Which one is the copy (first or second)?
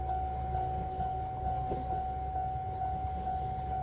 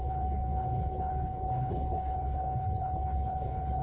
second